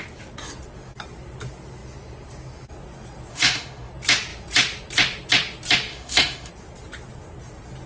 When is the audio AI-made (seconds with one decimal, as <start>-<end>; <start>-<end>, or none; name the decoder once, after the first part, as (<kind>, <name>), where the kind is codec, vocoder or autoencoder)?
3.3-3.9 (autoencoder, DAC-VAE); 5.9-6.5